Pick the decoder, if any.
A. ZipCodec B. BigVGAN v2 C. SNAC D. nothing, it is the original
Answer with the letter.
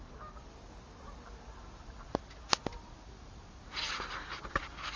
D